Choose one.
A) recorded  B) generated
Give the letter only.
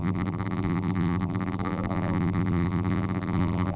B